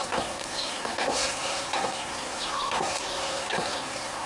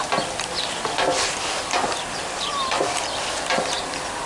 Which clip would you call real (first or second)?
second